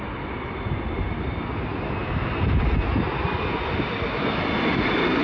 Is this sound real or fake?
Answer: real